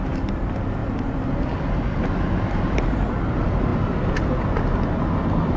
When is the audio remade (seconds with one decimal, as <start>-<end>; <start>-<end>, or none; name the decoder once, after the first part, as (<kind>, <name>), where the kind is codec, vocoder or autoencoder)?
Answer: none